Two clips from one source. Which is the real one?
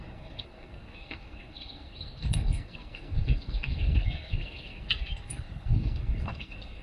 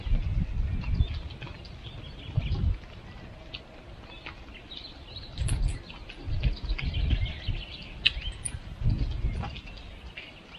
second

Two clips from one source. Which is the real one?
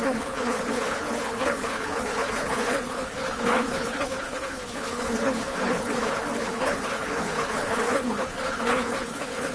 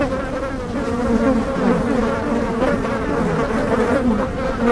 second